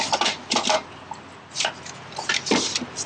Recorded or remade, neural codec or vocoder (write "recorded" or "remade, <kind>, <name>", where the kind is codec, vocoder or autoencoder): recorded